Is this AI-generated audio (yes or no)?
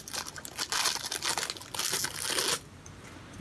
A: no